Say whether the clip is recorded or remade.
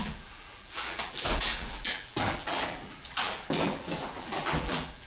remade